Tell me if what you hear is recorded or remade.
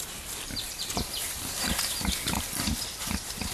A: remade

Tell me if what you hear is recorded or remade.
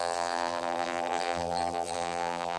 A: remade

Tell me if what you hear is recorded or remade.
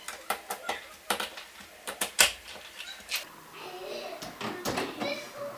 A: remade